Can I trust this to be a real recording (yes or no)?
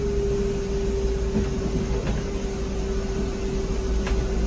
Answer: yes